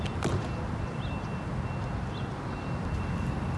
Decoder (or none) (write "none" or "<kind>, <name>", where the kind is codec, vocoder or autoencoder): none